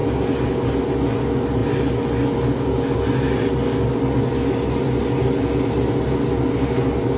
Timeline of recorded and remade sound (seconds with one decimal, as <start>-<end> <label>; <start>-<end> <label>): 0.0-7.2 recorded